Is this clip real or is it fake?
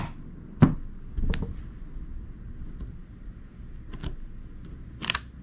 real